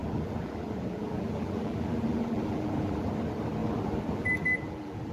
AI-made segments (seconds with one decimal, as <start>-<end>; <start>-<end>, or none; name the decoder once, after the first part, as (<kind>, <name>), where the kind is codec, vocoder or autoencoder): 0.0-3.1 (vocoder, BigVGAN v2); 3.6-5.1